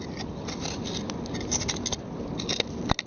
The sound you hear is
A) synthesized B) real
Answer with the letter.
B